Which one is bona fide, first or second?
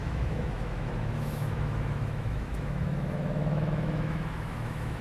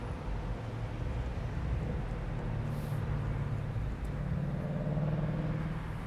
second